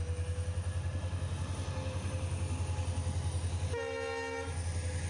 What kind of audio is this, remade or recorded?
recorded